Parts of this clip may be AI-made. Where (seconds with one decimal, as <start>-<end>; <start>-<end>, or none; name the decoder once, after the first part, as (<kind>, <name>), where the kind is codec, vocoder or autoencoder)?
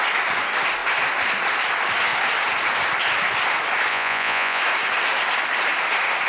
3.9-4.6 (vocoder, Vocos)